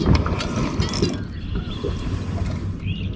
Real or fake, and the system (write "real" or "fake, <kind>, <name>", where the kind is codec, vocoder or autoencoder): real